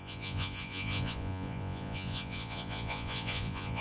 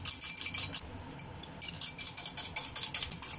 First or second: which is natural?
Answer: second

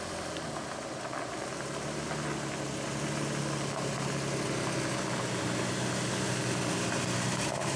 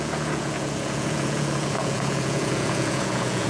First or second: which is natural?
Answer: first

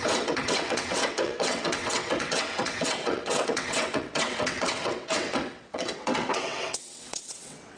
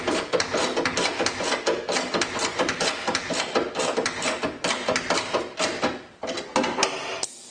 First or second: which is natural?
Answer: second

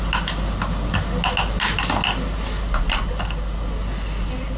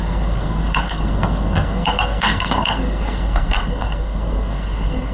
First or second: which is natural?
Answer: first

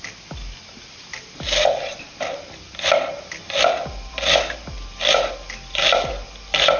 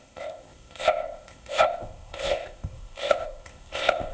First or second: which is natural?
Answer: first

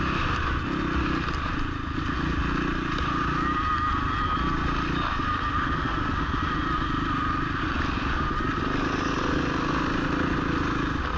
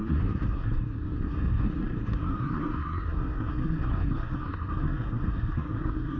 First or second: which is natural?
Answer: first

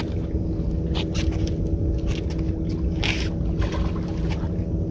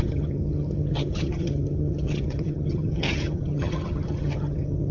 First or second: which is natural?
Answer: first